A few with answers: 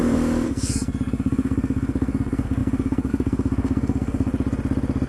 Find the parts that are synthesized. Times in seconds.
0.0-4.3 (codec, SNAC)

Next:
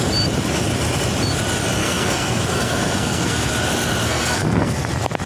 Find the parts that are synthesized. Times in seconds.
1.8-3.5 (codec, SNAC); 4.0-4.8